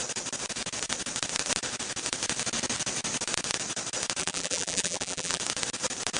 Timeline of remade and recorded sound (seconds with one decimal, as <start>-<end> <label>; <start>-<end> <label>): 0.0-4.2 recorded; 4.2-5.4 remade; 5.4-6.2 recorded